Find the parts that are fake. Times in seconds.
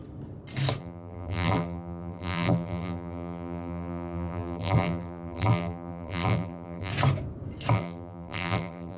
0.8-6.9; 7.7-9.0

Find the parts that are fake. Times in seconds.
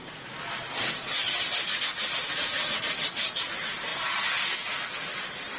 none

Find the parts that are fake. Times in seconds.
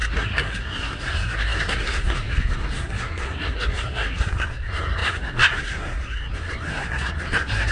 0.0-7.7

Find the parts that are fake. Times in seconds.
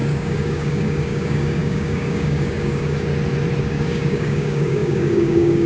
0.0-3.1; 3.6-5.7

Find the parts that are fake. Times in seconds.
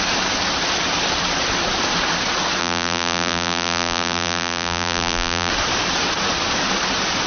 2.6-5.5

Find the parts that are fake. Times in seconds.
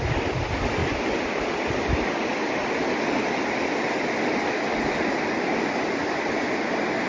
none